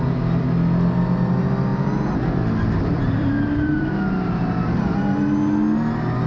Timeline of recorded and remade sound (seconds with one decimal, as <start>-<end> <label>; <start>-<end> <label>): 0.0-1.7 recorded; 1.7-4.8 remade; 4.8-6.3 recorded